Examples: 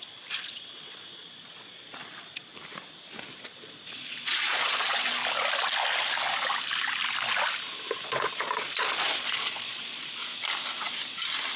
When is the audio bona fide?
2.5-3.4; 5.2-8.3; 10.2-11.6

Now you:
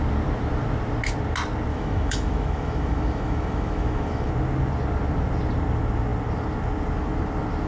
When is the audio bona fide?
0.0-1.7; 4.3-7.7

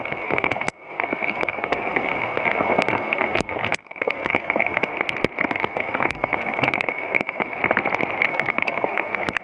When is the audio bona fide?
4.9-5.5; 7.6-8.3

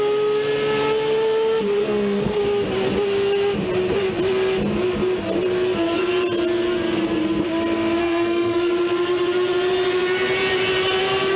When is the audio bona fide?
0.0-1.8; 2.4-8.0; 8.7-11.4

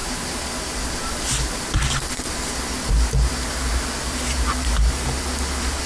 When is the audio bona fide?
0.0-5.9

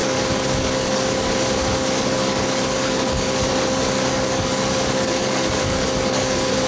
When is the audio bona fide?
none

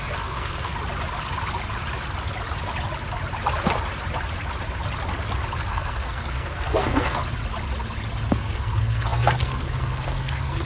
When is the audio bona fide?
0.7-5.7; 7.2-8.3